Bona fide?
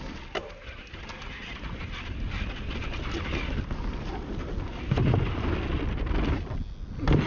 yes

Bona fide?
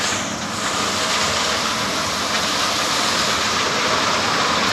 yes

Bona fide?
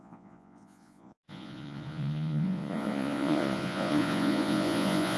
no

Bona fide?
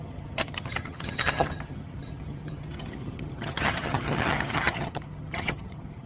no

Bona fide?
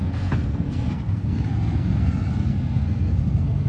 no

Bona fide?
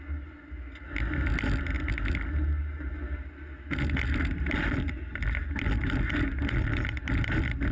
yes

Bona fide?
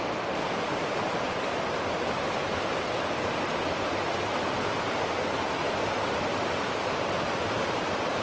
yes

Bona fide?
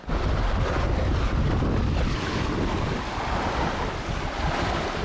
yes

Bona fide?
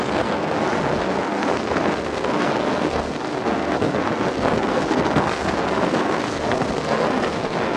no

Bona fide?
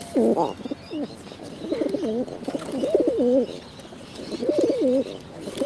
yes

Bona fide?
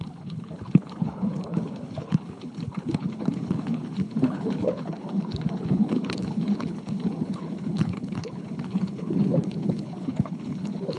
no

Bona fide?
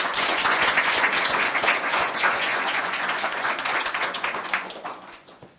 no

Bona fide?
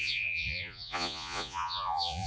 no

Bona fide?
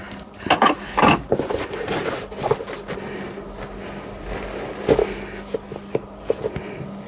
yes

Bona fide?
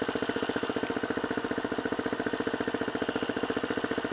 yes